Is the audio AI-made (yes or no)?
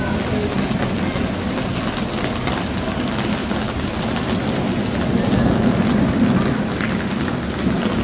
no